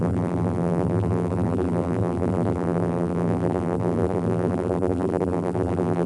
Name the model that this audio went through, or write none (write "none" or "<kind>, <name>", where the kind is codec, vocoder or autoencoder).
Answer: vocoder, BigVGAN v2